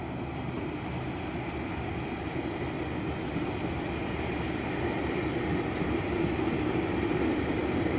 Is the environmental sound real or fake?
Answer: real